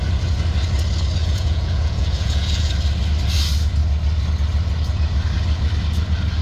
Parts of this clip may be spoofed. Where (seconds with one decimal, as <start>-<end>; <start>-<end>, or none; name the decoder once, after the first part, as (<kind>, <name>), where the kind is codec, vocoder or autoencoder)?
1.2-2.7 (vocoder, Vocos)